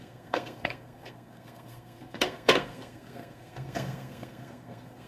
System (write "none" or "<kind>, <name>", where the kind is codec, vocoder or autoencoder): codec, SNAC